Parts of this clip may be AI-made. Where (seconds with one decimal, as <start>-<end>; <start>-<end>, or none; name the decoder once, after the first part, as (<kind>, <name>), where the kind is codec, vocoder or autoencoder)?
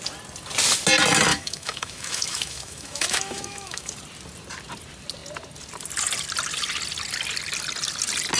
1.3-3.9 (autoencoder, DAC-VAE)